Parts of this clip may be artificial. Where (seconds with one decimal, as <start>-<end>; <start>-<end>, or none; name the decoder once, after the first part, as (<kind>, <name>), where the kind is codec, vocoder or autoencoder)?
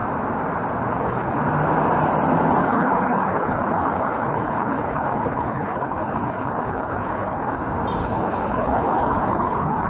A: 0.9-1.4 (codec, HILCodec); 2.6-7.6; 8.0-9.9